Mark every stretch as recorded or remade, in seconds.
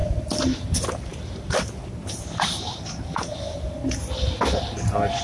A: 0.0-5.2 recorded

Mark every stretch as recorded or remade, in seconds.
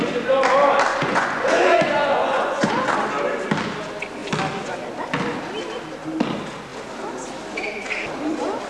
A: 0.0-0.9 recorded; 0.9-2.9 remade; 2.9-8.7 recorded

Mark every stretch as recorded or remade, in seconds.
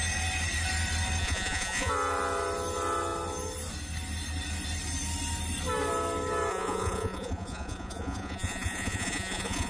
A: 0.0-1.2 recorded; 1.2-1.9 remade; 1.9-6.5 recorded; 6.5-9.7 remade